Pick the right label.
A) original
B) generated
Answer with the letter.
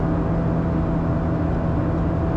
A